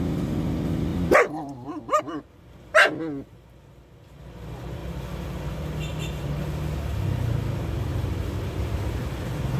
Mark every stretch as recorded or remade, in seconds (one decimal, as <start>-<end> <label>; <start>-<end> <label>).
0.0-0.9 recorded; 0.9-2.0 remade; 2.0-7.9 recorded; 7.9-8.8 remade; 8.8-9.6 recorded